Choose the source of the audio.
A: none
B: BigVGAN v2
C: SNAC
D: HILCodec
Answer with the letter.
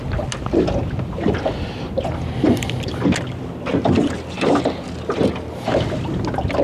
A